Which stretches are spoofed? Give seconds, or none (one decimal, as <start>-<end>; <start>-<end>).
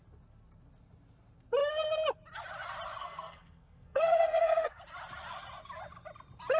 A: 3.0-4.8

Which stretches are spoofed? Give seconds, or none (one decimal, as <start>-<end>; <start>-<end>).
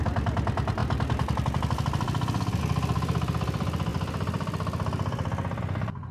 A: 0.0-6.1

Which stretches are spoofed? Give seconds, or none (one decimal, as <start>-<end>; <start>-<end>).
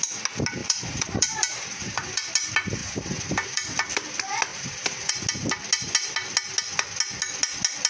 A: 0.6-2.3; 2.8-3.9; 4.5-5.1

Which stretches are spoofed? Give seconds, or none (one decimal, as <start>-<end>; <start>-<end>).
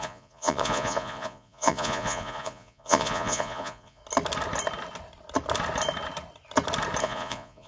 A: 0.0-4.0; 7.0-7.7